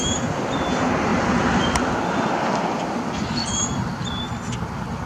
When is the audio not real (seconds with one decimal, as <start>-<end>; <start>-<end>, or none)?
none